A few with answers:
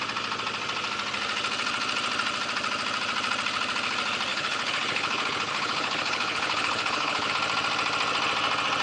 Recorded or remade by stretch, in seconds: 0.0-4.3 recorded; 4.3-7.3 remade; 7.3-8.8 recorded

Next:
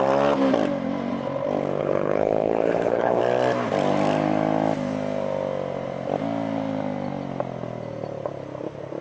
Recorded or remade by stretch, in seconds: 0.0-1.8 recorded; 1.8-3.2 remade; 3.2-9.0 recorded

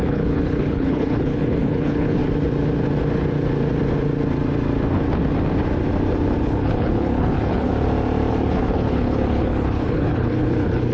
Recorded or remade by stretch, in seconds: 0.0-2.2 remade; 2.2-6.4 recorded; 6.4-7.7 remade; 7.7-8.3 recorded; 8.3-10.9 remade

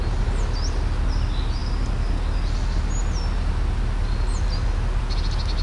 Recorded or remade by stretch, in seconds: 0.0-5.6 recorded

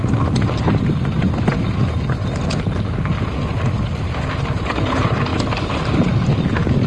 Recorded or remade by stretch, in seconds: 0.0-6.9 recorded

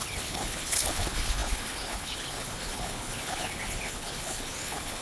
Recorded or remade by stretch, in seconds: 0.0-5.0 remade

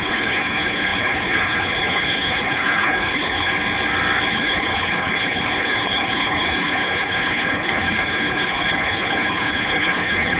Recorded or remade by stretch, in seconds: 0.0-3.5 remade; 3.5-4.3 recorded; 4.3-10.4 remade

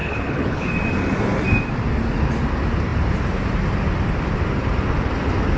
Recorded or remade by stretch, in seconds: 0.0-0.7 remade; 0.7-5.6 recorded